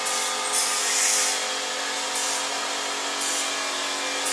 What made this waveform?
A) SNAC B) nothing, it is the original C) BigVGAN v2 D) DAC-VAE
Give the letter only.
B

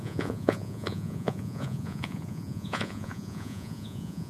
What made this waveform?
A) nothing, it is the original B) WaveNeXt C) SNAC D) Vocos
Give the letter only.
D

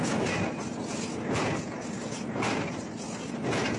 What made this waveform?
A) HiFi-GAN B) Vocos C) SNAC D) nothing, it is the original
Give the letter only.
D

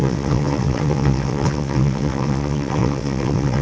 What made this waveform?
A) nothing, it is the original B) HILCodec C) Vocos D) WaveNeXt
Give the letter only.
D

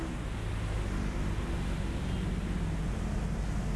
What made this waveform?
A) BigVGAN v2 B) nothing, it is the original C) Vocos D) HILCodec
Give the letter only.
B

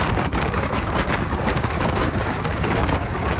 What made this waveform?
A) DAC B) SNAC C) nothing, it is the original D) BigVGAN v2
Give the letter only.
A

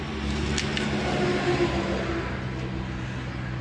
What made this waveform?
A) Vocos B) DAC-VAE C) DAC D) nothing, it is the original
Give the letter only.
D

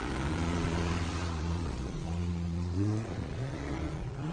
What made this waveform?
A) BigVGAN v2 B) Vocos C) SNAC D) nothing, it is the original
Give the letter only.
B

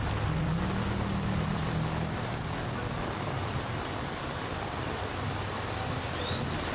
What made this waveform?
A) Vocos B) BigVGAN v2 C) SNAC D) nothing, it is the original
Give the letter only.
D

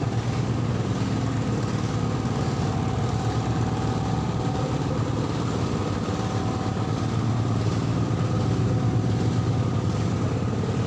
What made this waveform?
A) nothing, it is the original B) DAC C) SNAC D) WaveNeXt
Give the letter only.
A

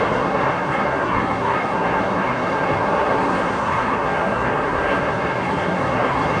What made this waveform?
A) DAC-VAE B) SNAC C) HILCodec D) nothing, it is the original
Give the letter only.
B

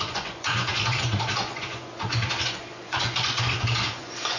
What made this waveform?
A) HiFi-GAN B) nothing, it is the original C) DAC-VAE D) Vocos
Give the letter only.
D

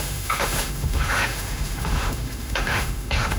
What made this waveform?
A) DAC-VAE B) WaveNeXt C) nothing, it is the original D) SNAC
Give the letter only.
A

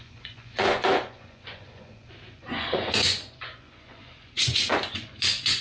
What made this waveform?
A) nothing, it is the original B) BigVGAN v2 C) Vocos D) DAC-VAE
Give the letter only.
C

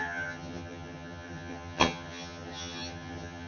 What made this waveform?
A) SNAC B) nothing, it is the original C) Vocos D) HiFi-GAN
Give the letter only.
D